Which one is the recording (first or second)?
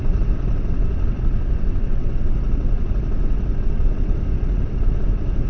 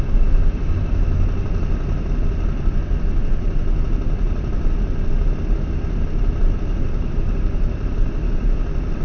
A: second